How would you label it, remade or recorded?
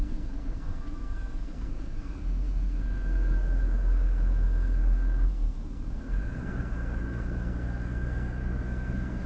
remade